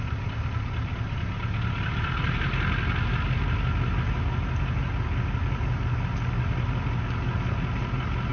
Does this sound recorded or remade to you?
recorded